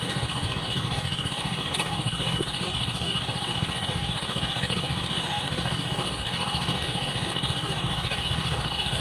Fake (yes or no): yes